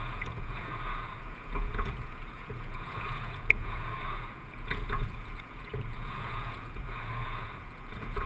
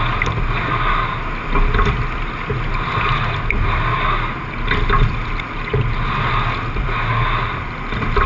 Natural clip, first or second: second